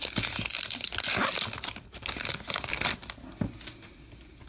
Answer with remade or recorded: recorded